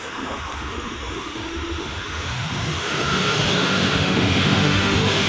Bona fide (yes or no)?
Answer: no